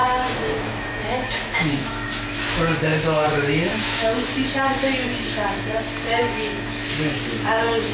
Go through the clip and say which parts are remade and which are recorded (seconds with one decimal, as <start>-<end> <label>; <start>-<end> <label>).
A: 0.0-4.3 remade; 4.3-6.2 recorded; 6.2-7.9 remade